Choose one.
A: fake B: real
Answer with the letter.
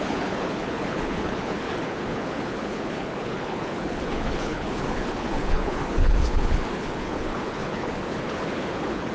A